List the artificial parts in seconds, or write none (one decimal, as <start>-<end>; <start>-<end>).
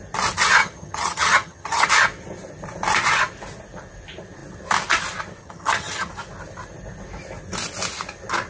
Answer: 0.6-1.9; 5.4-6.1